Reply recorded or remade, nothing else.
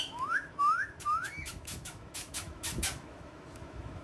remade